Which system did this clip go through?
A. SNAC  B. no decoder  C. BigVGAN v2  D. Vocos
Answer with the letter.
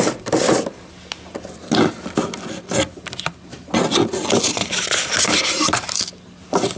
B